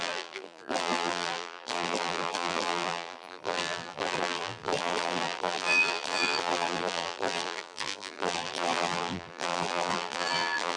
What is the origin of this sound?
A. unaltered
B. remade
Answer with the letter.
B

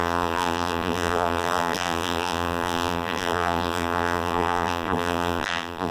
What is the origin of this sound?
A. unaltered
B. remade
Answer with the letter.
B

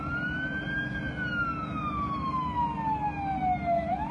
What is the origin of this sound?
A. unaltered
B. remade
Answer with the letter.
A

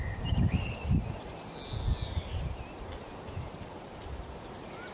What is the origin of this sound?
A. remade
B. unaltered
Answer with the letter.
B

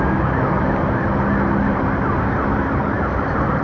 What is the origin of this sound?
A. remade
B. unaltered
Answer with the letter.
A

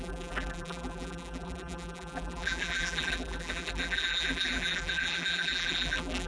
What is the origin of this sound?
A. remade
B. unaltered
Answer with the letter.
A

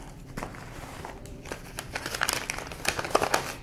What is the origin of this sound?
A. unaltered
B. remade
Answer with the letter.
B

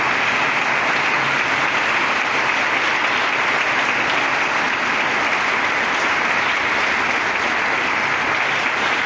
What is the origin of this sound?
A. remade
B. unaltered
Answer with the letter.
B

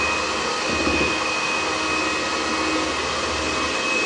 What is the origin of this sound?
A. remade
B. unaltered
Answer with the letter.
B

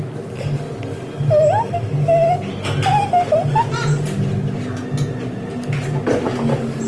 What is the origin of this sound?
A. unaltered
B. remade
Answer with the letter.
A